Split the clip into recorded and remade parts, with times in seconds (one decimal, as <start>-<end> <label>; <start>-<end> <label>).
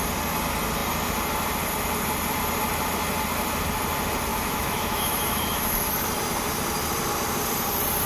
0.0-4.3 recorded; 4.3-5.9 remade; 5.9-8.1 recorded